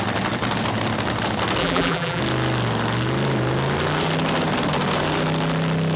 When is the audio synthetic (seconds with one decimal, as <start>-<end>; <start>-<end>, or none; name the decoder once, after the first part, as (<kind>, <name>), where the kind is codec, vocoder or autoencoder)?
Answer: 1.6-2.2 (vocoder, BigVGAN v2)